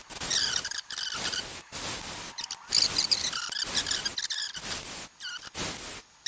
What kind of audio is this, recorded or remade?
recorded